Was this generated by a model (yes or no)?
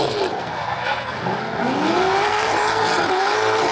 yes